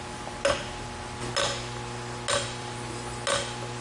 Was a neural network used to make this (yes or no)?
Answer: no